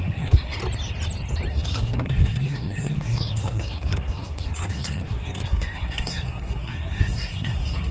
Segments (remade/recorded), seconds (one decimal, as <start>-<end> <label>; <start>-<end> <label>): 0.0-0.6 remade; 0.6-1.5 recorded; 1.5-7.9 remade